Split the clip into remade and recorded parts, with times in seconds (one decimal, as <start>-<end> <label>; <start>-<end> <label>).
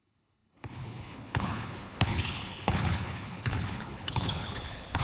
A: 0.0-5.0 remade